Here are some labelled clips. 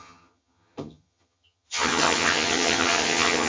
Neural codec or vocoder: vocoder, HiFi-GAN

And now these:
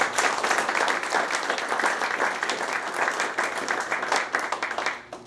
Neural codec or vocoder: none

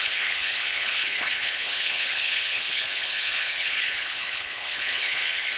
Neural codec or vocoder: codec, HILCodec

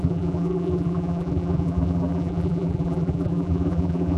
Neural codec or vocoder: vocoder, BigVGAN v2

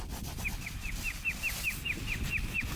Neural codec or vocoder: none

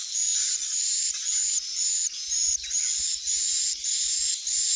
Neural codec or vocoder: none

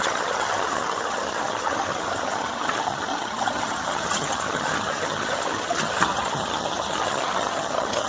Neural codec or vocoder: vocoder, HiFi-GAN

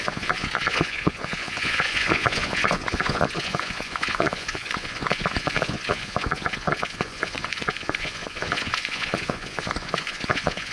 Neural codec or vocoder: vocoder, Vocos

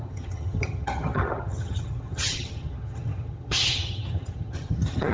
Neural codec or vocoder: vocoder, HiFi-GAN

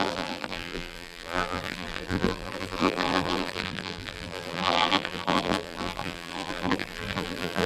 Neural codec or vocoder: vocoder, BigVGAN v2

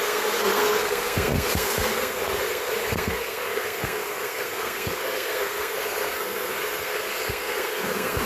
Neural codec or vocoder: codec, SNAC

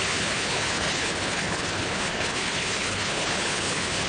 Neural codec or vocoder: codec, HILCodec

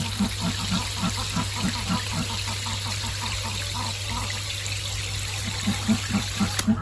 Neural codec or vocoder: none